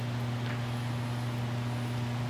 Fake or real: real